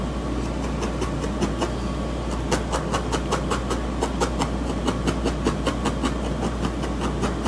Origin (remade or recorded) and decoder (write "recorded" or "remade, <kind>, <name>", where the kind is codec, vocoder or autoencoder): recorded